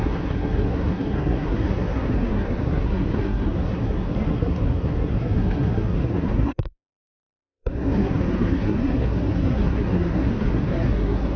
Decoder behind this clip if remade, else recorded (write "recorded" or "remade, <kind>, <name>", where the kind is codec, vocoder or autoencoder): remade, codec, SNAC